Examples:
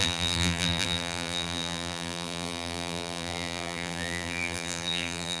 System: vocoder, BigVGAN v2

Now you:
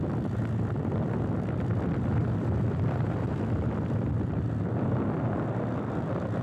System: vocoder, BigVGAN v2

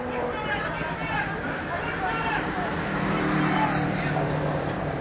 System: vocoder, BigVGAN v2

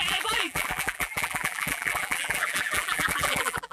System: vocoder, BigVGAN v2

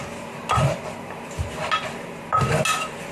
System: none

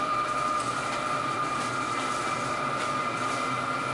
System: vocoder, BigVGAN v2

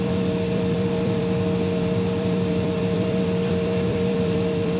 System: vocoder, BigVGAN v2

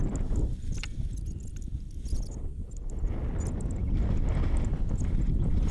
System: none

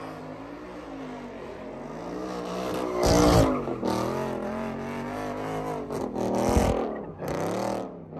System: none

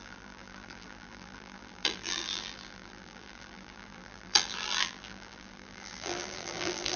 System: vocoder, BigVGAN v2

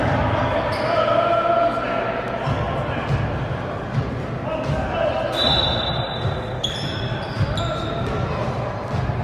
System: none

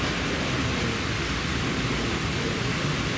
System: none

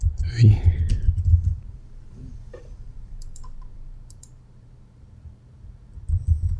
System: vocoder, BigVGAN v2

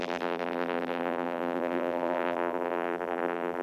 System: vocoder, BigVGAN v2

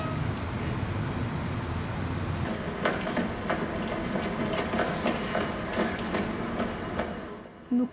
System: none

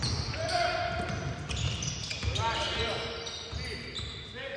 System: none